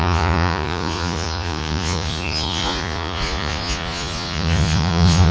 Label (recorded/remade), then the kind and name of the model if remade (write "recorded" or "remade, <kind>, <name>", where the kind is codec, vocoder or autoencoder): remade, vocoder, Vocos